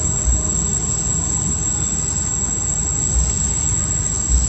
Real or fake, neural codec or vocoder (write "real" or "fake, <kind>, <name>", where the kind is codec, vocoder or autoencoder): real